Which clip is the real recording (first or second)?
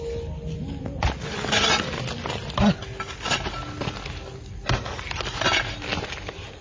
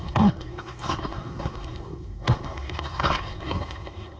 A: first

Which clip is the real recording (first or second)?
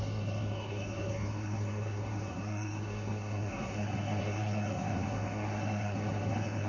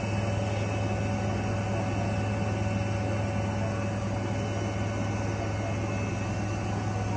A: second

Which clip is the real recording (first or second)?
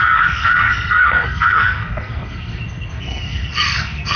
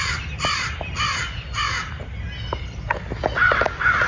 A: second